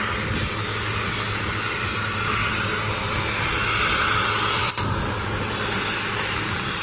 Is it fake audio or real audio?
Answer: real